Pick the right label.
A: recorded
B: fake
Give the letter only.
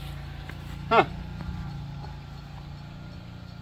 A